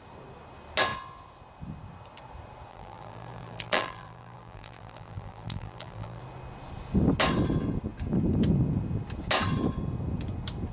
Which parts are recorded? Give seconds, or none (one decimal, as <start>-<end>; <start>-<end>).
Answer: 0.0-2.7; 6.2-10.7